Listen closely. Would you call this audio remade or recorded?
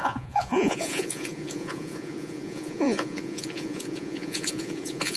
remade